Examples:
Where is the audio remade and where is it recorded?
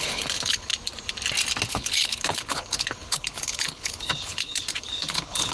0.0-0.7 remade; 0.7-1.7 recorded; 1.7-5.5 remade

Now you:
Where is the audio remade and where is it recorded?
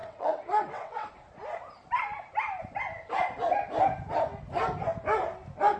0.0-1.1 remade; 1.1-5.8 recorded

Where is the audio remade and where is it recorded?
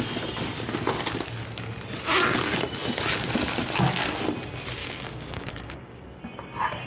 0.0-4.8 recorded; 4.8-6.0 remade; 6.0-6.9 recorded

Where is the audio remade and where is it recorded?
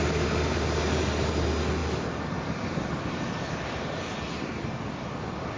0.0-5.6 recorded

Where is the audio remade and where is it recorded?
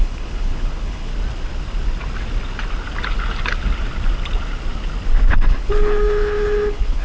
0.0-1.1 remade; 1.1-5.3 recorded; 5.3-7.0 remade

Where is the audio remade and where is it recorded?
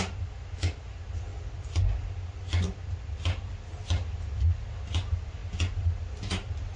0.0-6.8 recorded